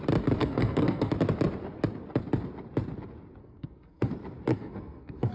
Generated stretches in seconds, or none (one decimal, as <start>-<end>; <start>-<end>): 0.4-1.1; 3.4-4.1; 4.5-5.3